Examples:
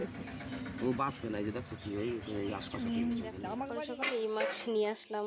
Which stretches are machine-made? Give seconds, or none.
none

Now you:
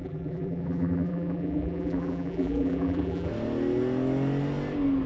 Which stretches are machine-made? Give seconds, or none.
0.0-3.3 (vocoder, BigVGAN v2)

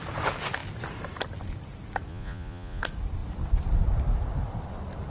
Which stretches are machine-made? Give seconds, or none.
2.1-2.8 (vocoder, Vocos)

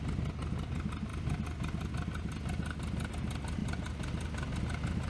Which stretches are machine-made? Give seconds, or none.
none